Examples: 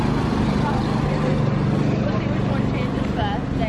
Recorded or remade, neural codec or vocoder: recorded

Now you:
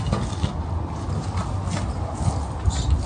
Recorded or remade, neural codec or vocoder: recorded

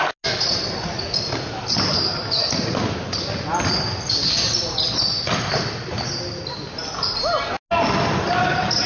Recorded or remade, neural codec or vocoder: recorded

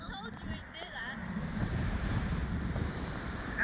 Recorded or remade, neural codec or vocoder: remade, vocoder, BigVGAN v2